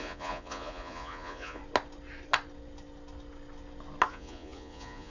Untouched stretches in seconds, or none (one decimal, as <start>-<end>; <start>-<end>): 1.6-4.1